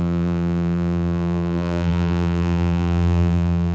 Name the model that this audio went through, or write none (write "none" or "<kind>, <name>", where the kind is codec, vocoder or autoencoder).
vocoder, BigVGAN v2